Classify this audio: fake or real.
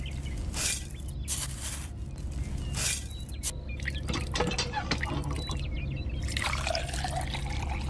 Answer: real